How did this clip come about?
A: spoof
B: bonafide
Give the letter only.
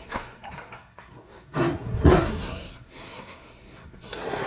A